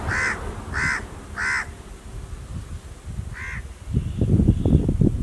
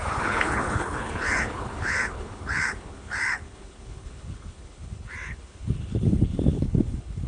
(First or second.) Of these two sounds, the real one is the first